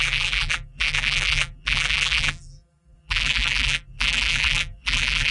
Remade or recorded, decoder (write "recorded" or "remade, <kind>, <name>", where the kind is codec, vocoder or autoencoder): remade, vocoder, BigVGAN v2